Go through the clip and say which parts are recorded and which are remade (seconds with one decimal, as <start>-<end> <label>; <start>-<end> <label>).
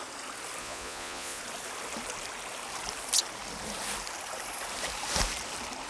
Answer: 0.0-0.6 recorded; 0.6-1.4 remade; 1.4-5.9 recorded